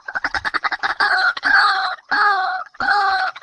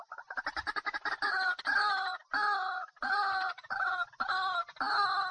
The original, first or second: second